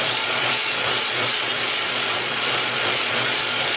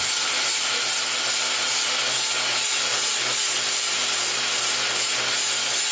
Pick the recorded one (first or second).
second